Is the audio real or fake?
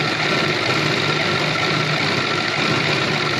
real